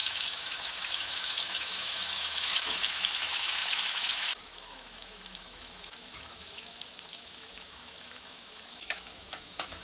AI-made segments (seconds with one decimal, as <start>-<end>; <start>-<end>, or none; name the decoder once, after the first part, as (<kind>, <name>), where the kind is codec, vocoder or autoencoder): 0.0-9.8 (autoencoder, DAC-VAE)